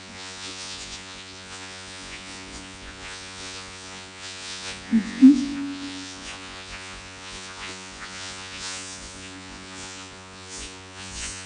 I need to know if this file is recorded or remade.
remade